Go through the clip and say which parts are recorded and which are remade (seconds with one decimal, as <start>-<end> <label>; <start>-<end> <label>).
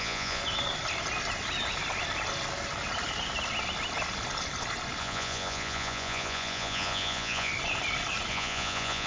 0.0-0.4 remade; 0.4-5.0 recorded; 5.0-7.5 remade; 7.5-8.3 recorded; 8.3-9.1 remade